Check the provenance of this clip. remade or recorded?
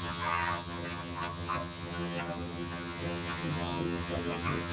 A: remade